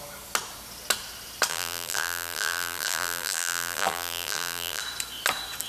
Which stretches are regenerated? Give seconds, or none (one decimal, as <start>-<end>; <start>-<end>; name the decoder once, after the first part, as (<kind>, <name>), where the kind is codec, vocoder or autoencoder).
1.5-4.8 (vocoder, BigVGAN v2)